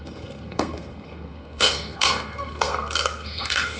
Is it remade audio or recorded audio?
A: remade